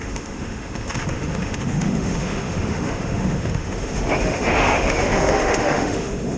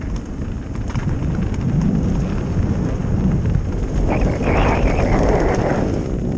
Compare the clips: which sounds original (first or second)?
second